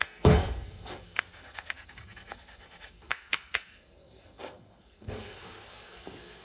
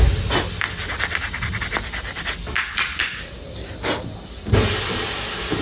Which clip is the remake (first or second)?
first